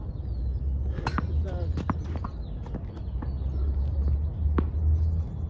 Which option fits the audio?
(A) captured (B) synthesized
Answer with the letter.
A